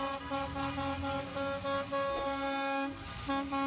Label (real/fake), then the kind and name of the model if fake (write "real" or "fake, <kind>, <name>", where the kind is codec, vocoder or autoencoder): real